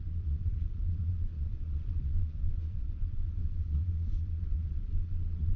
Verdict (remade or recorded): remade